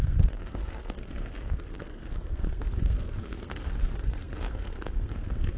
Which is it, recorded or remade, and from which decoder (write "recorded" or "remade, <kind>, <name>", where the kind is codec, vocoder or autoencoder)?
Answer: remade, codec, SNAC